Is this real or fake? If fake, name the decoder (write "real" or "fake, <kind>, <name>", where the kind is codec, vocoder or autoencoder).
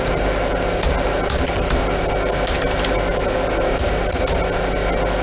real